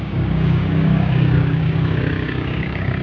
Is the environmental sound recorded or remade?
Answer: remade